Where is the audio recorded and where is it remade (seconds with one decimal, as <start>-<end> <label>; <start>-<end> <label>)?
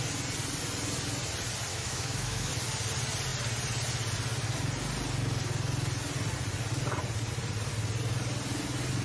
0.0-1.7 recorded; 1.7-2.5 remade; 2.5-9.0 recorded